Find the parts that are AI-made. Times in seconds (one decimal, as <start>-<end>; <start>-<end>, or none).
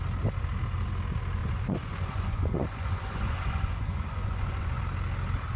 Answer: 1.4-4.8